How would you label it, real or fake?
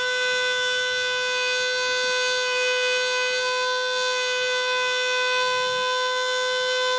real